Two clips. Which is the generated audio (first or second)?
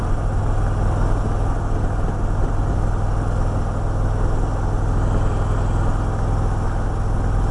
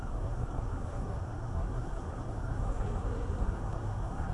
second